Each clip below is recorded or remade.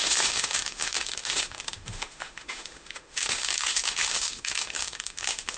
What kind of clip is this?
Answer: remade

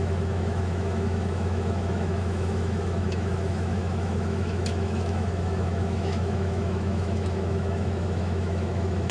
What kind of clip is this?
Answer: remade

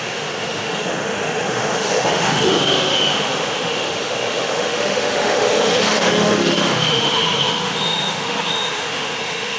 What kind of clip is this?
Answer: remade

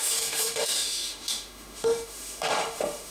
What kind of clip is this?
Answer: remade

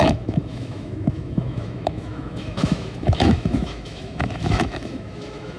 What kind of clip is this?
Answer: remade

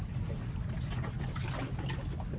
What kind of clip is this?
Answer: recorded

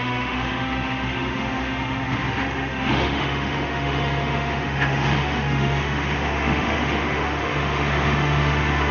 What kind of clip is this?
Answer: remade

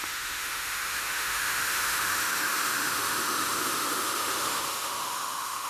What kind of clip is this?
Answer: remade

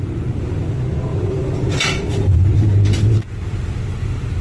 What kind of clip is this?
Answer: recorded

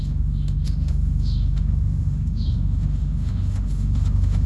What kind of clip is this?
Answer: remade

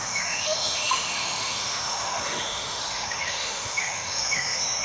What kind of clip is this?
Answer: remade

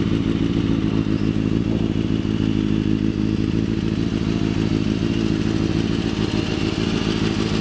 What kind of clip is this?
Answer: recorded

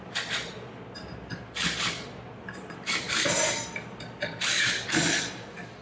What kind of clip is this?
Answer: recorded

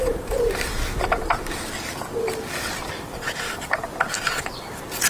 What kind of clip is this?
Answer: recorded